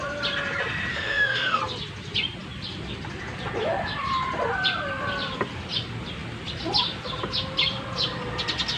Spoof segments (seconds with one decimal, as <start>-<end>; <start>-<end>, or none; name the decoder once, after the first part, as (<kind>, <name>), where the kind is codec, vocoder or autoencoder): 0.9-1.6 (autoencoder, DAC-VAE)